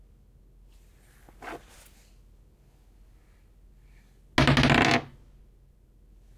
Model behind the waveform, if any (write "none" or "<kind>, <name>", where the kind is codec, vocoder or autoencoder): none